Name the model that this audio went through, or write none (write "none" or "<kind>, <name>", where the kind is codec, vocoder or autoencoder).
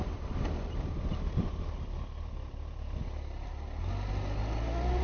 none